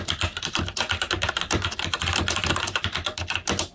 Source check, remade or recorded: remade